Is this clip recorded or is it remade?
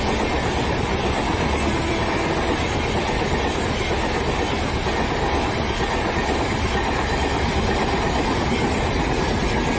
recorded